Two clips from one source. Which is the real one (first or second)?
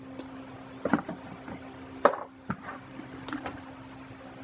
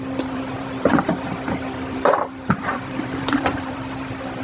first